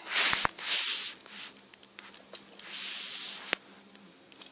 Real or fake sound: real